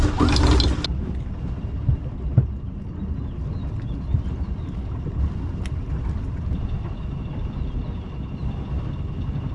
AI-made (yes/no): no